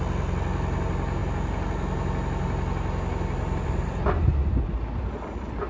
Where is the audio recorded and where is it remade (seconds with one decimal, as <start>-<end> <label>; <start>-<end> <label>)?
0.0-5.7 recorded